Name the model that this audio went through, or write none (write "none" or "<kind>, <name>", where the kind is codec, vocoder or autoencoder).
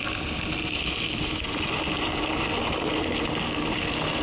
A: none